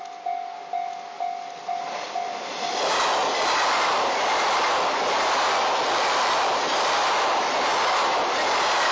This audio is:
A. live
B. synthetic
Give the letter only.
A